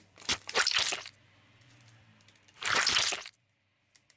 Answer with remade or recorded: remade